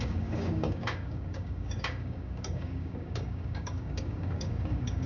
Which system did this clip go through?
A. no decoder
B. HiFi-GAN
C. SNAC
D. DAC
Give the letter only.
D